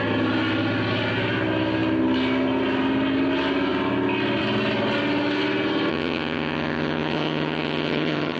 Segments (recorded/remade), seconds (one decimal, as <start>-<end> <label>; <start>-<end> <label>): 0.0-5.9 recorded; 5.9-8.4 remade